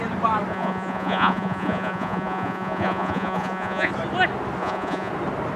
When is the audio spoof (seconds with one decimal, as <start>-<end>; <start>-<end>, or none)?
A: 0.5-3.9; 4.6-5.1

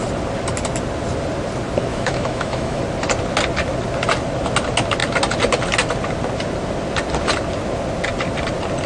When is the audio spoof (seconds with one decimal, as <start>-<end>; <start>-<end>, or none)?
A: 1.9-2.8

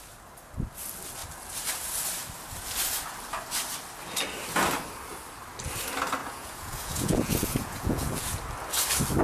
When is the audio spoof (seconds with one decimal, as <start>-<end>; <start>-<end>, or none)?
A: 6.2-8.4